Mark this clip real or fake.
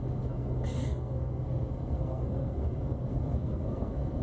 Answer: fake